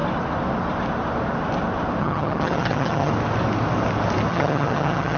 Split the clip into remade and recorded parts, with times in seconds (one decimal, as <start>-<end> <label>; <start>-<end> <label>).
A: 0.0-2.0 recorded; 2.0-3.1 remade; 3.1-4.3 recorded; 4.3-5.2 remade